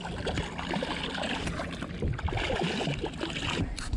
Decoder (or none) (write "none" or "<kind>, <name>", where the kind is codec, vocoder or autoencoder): none